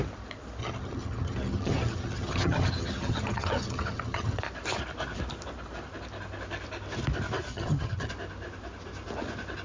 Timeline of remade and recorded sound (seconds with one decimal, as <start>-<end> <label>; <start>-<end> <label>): 0.0-0.6 recorded; 0.6-4.4 remade; 4.4-7.5 recorded; 7.5-8.1 remade; 8.1-9.6 recorded